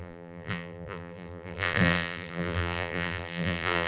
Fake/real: fake